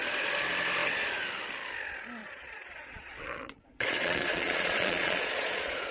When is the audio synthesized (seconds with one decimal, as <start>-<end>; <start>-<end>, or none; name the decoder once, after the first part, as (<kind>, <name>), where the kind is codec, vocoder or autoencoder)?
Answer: 2.2-5.9 (vocoder, Vocos)

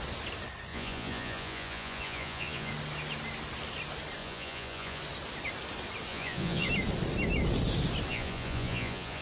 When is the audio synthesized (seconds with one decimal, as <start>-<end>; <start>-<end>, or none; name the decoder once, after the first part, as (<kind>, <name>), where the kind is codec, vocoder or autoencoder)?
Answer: 0.7-2.7 (vocoder, Vocos); 4.2-5.0; 6.1-6.7; 8.1-9.2

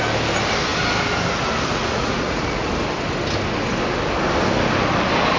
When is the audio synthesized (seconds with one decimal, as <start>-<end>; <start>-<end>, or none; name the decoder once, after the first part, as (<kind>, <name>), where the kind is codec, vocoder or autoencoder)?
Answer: 1.8-2.7 (vocoder, Vocos)

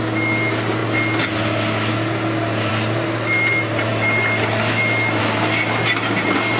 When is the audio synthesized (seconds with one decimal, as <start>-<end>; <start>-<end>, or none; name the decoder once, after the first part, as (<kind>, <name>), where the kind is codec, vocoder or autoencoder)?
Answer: none

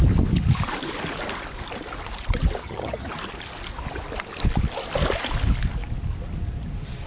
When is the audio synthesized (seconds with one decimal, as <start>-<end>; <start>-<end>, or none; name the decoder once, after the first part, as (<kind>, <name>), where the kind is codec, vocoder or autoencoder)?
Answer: 2.6-3.1 (vocoder, HiFi-GAN)